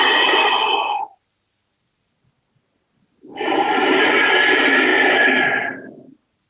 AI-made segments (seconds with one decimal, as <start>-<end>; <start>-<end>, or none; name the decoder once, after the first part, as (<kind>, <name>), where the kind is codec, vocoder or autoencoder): none